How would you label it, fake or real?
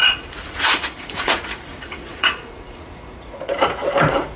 fake